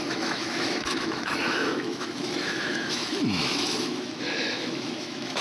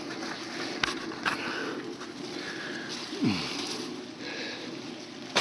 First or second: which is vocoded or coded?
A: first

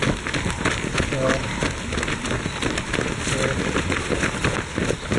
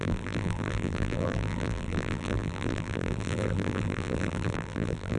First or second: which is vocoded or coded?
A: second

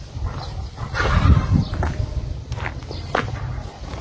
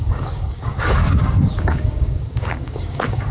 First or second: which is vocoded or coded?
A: second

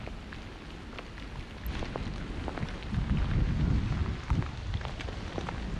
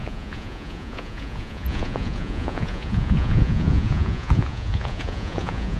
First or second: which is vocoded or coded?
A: second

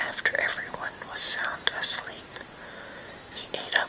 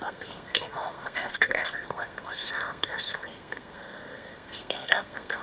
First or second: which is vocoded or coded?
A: second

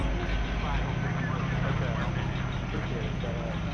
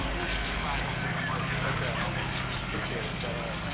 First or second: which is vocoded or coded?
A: second